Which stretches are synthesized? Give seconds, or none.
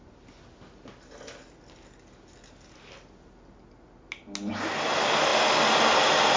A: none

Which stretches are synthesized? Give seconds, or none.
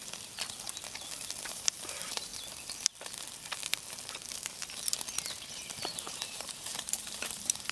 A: 1.4-2.3 (vocoder, BigVGAN v2); 5.3-7.7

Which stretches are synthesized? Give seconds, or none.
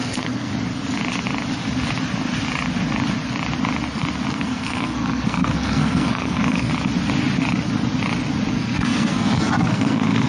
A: 0.0-0.5 (codec, SNAC); 4.3-6.7; 8.5-10.3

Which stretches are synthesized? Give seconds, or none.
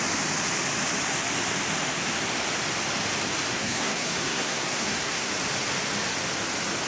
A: 3.5-5.3 (codec, SNAC)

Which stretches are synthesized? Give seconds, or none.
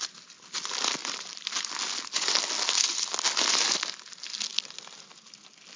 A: 1.0-1.7 (vocoder, BigVGAN v2)